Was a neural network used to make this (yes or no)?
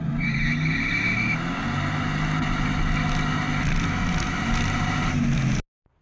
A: no